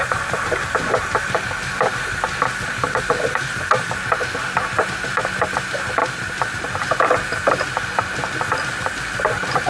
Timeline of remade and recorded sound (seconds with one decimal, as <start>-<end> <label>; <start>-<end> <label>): 0.0-1.9 recorded; 1.9-3.4 remade; 3.4-6.0 recorded; 6.0-6.8 remade; 6.8-9.7 recorded

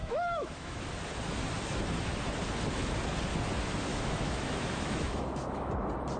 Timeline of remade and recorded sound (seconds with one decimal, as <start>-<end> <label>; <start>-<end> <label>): 0.0-0.9 remade; 0.9-3.9 recorded; 3.9-5.7 remade; 5.7-6.2 recorded

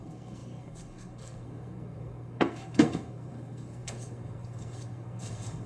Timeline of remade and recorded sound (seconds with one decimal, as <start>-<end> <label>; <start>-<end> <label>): 0.0-5.7 remade

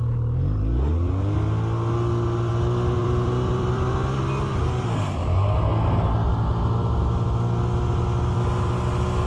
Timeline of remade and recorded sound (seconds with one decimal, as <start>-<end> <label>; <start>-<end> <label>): 0.0-3.0 recorded; 3.0-3.9 remade; 3.9-9.3 recorded

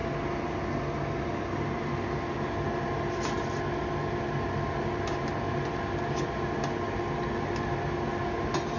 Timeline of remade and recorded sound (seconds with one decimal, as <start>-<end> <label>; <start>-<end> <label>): 0.0-8.8 recorded

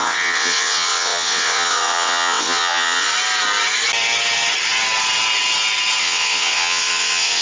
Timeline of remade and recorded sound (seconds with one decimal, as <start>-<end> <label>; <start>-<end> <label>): 0.0-3.1 remade; 3.1-6.0 recorded; 6.0-7.4 remade